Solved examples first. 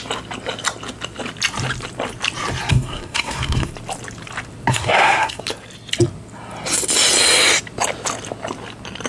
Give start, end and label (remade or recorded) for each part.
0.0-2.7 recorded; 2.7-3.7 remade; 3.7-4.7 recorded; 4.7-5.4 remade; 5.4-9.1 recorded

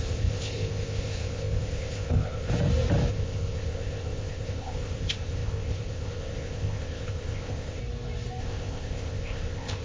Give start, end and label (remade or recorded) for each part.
0.0-2.5 remade; 2.5-3.1 recorded; 3.1-7.8 remade; 7.8-8.4 recorded; 8.4-9.8 remade

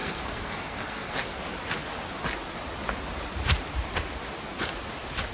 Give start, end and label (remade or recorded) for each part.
0.0-1.4 remade; 1.4-5.3 recorded

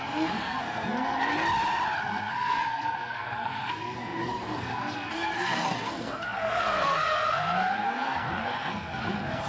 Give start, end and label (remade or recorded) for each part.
0.0-1.3 remade; 1.3-2.0 recorded; 2.0-9.5 remade

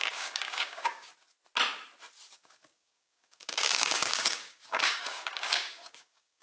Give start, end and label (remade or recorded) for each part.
0.0-1.1 remade; 1.1-2.3 recorded; 2.3-6.4 remade

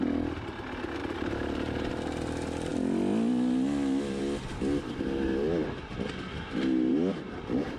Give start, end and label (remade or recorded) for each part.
0.0-1.0 recorded; 1.0-1.9 remade; 1.9-7.8 recorded

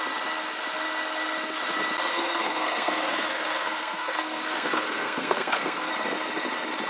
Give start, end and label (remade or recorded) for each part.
0.0-2.1 recorded; 2.1-5.9 remade; 5.9-6.9 recorded